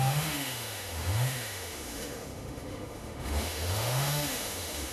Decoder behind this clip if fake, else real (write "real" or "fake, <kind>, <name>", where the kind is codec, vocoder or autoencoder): fake, autoencoder, DAC-VAE